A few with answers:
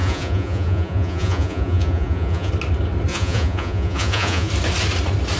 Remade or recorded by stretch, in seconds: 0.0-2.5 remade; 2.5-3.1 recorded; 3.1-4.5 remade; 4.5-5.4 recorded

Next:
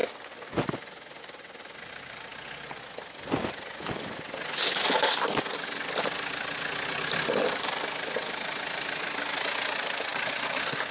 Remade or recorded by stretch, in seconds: 0.0-10.9 recorded

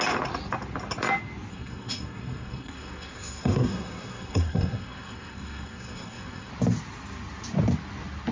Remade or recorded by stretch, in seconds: 0.0-1.5 recorded; 1.5-6.5 remade; 6.5-8.3 recorded

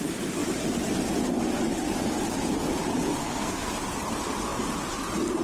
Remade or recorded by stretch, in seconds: 0.0-3.2 recorded; 3.2-3.7 remade; 3.7-5.4 recorded

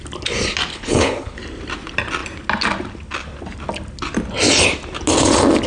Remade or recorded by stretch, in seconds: 0.0-0.7 recorded; 0.7-1.4 remade; 1.4-5.7 recorded